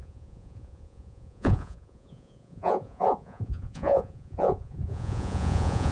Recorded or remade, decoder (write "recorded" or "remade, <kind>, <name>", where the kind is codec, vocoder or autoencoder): remade, vocoder, Vocos